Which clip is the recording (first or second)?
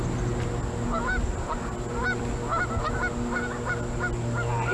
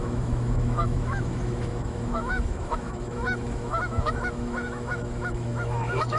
first